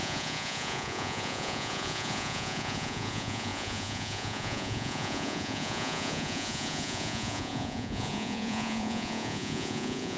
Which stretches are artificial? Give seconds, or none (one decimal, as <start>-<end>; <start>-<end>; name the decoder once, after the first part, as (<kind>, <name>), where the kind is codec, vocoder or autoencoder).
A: 0.0-10.2 (vocoder, Vocos)